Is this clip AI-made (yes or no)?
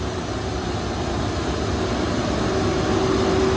no